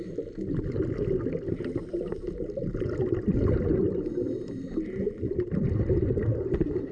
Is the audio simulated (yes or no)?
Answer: no